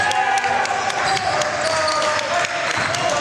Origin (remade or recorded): recorded